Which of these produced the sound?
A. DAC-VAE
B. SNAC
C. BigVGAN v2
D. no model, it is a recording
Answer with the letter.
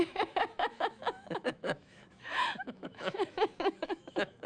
A